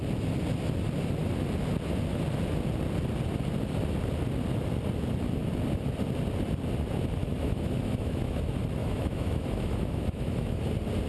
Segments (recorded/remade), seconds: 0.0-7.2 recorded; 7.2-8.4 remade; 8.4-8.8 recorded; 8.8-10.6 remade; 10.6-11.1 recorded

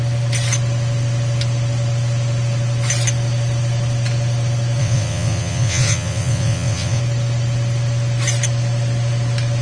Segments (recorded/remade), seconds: 0.0-4.8 recorded; 4.8-7.0 remade; 7.0-9.6 recorded